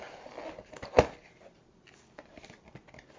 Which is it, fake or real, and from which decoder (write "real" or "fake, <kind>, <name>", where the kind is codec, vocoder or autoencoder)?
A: fake, vocoder, BigVGAN v2